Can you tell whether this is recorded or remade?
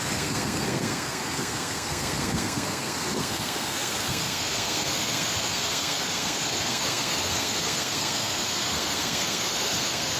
remade